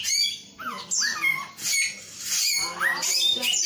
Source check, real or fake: real